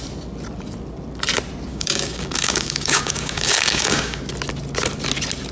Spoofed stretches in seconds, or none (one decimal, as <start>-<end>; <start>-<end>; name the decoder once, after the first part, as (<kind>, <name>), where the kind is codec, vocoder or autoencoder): 1.7-4.2 (codec, DAC)